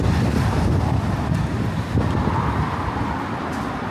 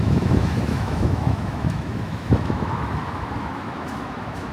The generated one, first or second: second